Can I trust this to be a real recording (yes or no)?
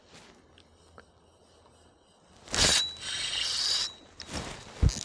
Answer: yes